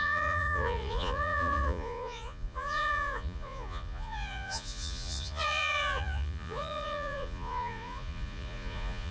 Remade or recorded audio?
remade